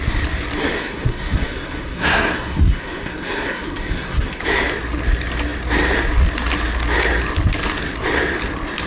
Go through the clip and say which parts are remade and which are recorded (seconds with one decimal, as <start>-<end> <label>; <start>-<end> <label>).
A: 0.0-0.6 recorded; 0.6-4.4 remade; 4.4-8.9 recorded